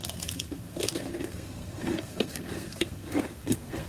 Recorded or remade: remade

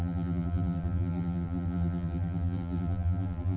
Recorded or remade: remade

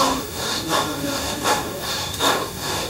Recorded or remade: remade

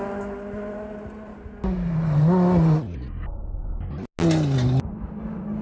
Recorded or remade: recorded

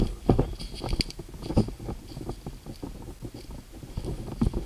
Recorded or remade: recorded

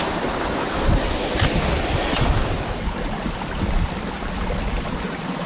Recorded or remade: recorded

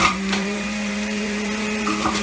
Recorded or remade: remade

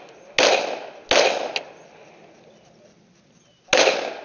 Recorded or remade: recorded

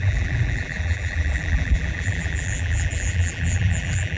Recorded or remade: remade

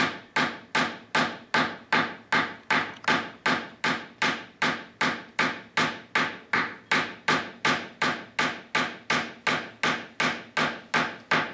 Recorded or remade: recorded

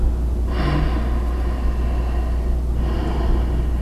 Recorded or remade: recorded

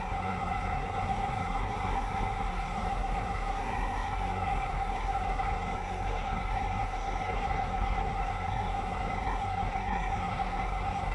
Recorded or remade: remade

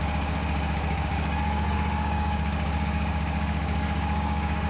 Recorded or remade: remade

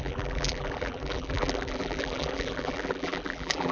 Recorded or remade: remade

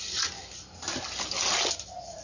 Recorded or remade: recorded